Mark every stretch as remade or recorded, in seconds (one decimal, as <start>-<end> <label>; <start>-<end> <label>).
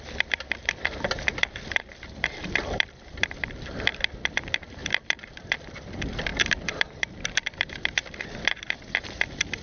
0.0-9.6 remade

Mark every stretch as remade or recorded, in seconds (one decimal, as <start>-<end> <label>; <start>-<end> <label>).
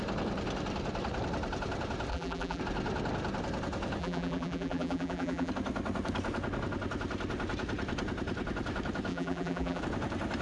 0.0-2.1 recorded; 2.1-2.6 remade; 2.6-4.0 recorded; 4.0-5.5 remade; 5.5-9.1 recorded; 9.1-9.8 remade; 9.8-10.4 recorded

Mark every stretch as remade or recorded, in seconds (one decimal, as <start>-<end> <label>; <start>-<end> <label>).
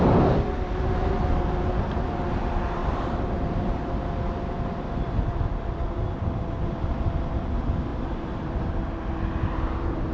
0.0-2.8 recorded; 2.8-3.9 remade; 3.9-7.9 recorded; 7.9-8.7 remade; 8.7-10.1 recorded